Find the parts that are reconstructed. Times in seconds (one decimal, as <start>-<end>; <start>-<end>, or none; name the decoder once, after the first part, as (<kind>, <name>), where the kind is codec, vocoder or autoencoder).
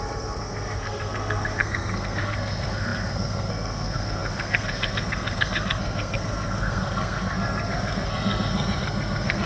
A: 0.0-9.5 (codec, SNAC)